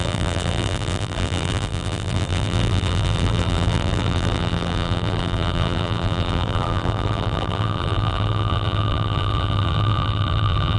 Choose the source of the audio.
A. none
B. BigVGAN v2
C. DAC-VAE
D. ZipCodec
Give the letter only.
B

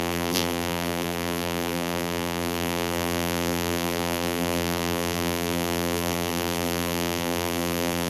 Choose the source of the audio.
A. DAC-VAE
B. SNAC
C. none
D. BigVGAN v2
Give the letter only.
D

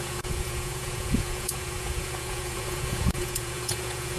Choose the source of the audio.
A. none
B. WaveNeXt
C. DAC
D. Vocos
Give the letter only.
D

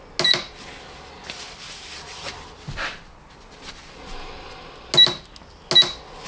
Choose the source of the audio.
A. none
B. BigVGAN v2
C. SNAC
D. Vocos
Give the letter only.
A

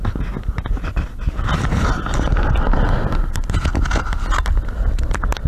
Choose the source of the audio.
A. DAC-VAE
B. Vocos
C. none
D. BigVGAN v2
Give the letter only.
C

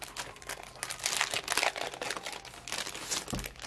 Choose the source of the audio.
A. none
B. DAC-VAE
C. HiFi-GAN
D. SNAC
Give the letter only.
A